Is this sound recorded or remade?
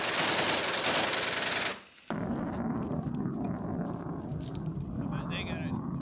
recorded